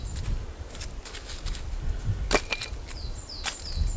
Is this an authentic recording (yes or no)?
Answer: yes